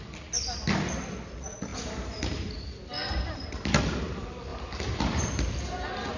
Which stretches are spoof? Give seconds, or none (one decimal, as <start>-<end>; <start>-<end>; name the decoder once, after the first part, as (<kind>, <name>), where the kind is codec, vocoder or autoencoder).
1.7-2.5 (vocoder, BigVGAN v2); 3.0-3.5